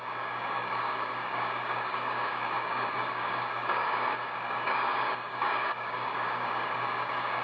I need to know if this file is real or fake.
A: fake